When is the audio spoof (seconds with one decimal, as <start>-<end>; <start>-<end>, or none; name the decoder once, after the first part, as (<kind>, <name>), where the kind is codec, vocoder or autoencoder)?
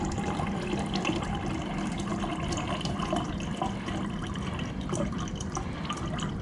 none